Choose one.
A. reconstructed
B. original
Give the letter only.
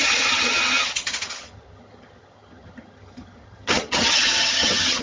A